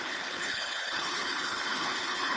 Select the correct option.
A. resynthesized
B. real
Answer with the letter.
A